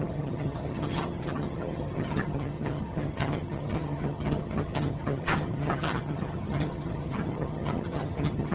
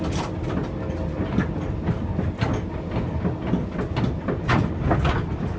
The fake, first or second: first